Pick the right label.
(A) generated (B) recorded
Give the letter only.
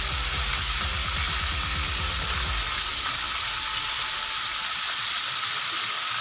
B